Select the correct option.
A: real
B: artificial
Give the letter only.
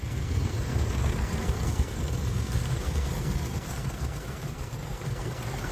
B